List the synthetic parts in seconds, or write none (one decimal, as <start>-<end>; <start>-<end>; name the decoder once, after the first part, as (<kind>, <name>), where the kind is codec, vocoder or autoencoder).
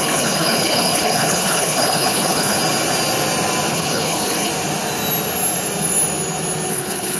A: 0.0-2.6 (codec, HILCodec); 3.7-4.5; 6.7-7.2